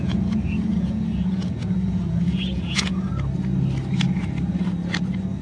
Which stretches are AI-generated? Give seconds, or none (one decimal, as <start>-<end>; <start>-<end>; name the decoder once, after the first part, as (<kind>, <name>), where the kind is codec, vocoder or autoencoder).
0.0-3.1 (vocoder, Vocos)